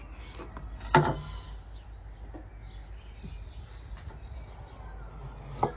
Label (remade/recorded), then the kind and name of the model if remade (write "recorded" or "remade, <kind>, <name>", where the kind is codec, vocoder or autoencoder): recorded